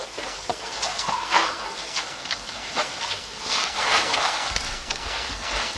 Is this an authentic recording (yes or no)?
no